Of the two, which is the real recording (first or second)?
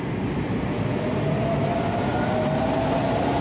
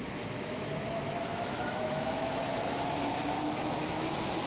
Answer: first